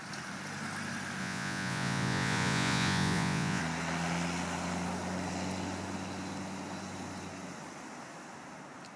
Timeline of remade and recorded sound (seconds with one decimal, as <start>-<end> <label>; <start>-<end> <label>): 0.0-1.2 recorded; 1.2-3.6 remade; 3.6-9.0 recorded